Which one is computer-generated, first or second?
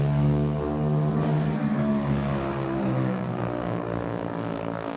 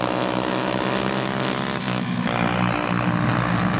first